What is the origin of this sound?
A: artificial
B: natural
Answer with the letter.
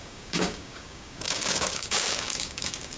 A